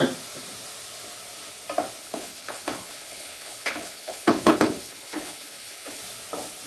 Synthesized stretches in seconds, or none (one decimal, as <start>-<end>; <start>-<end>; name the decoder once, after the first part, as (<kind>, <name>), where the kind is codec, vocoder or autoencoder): 2.0-6.0 (codec, HILCodec)